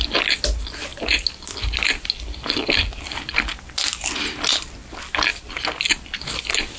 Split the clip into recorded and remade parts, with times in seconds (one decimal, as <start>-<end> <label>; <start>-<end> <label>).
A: 0.0-6.8 recorded